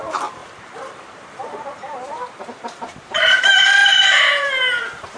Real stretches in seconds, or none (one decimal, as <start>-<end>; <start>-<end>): 0.0-0.4; 3.4-3.8

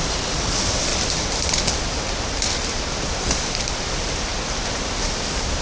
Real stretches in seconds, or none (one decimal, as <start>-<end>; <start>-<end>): 0.9-3.2; 4.3-5.0